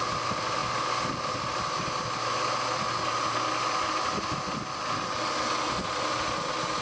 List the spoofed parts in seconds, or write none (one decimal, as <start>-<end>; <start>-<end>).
none